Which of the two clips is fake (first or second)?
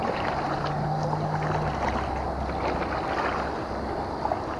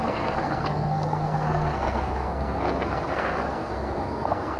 second